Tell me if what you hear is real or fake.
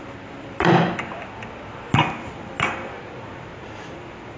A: real